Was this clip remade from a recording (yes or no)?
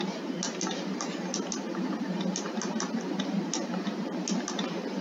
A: no